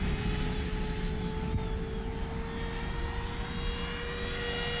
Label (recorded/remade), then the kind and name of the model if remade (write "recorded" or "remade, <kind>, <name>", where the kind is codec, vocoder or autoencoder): recorded